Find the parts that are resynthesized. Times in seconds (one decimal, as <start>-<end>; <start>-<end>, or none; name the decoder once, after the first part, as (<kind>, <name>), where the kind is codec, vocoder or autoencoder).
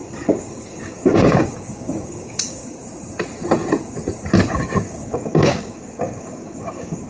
0.5-2.6 (codec, DAC); 4.5-7.1